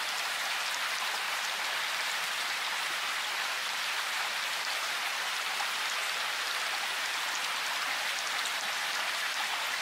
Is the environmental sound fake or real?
real